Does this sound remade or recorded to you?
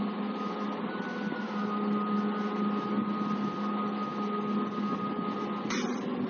recorded